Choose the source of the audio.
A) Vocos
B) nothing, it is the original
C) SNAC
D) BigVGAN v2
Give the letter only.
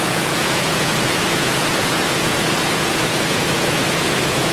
A